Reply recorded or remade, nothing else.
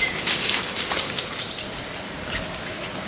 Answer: recorded